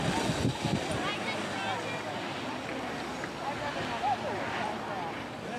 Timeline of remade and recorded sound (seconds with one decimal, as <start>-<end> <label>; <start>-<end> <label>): 0.0-5.6 recorded

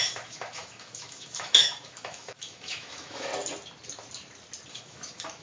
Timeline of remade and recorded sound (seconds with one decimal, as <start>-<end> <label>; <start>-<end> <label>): 0.0-3.3 remade; 3.3-4.7 recorded; 4.7-5.4 remade

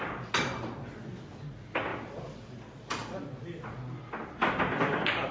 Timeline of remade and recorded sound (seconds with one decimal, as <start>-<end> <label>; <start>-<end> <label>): 0.0-5.3 recorded

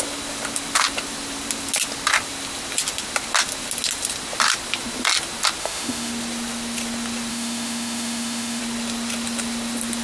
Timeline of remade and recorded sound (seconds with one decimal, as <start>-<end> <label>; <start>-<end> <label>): 0.0-5.6 recorded; 5.6-6.1 remade; 6.1-7.3 recorded; 7.3-8.6 remade; 8.6-10.0 recorded